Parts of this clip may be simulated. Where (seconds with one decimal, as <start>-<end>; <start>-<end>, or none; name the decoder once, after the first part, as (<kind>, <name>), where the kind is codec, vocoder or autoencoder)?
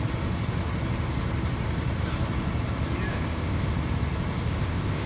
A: 3.1-3.7 (codec, ZipCodec); 4.5-5.1